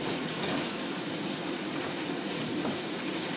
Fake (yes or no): yes